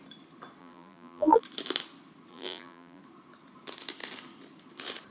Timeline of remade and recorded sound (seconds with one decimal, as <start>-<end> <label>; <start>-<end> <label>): 0.0-0.6 recorded; 0.6-1.4 remade; 1.4-2.3 recorded; 2.3-3.0 remade; 3.0-5.1 recorded